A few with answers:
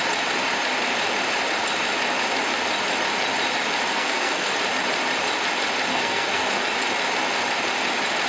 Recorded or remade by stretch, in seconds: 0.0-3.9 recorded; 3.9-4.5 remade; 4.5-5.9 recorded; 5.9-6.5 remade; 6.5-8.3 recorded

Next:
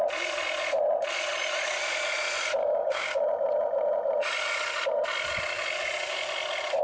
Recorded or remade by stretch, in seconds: 0.0-2.6 recorded; 2.6-3.2 remade; 3.2-6.8 recorded

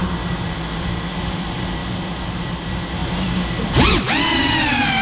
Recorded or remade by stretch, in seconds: 0.0-5.0 recorded

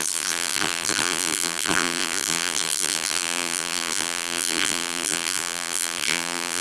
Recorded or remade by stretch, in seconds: 0.0-6.6 remade

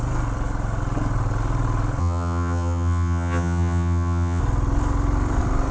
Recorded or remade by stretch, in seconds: 0.0-2.0 recorded; 2.0-4.4 remade; 4.4-5.7 recorded

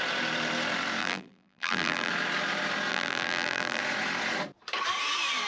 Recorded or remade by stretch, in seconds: 0.0-1.0 recorded; 1.0-2.1 remade; 2.1-2.9 recorded; 2.9-3.8 remade; 3.8-5.5 recorded

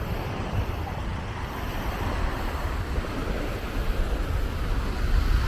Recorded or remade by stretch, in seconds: 0.0-5.5 recorded

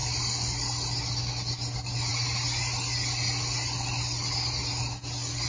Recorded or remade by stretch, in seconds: 0.0-5.5 recorded